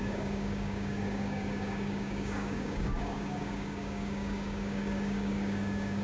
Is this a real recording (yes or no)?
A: no